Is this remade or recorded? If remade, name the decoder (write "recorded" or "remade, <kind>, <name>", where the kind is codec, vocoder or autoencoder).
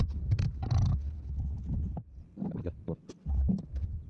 recorded